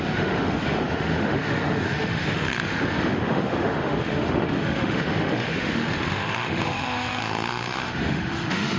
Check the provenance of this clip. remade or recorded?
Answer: remade